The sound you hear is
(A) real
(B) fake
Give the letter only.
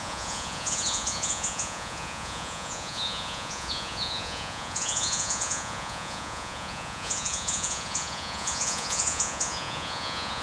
B